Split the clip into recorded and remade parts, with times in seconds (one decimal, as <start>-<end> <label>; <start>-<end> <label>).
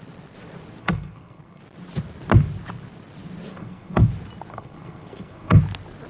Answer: 0.0-0.8 recorded; 0.8-1.6 remade; 1.6-3.5 recorded; 3.5-4.1 remade; 4.1-4.5 recorded; 4.5-5.6 remade; 5.6-6.1 recorded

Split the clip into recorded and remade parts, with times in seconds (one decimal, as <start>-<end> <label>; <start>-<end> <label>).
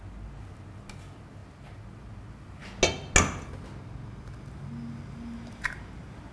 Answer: 0.0-6.3 recorded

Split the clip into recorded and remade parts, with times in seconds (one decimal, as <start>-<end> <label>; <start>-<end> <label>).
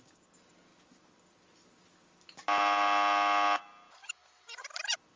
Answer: 0.0-4.2 recorded; 4.2-5.2 remade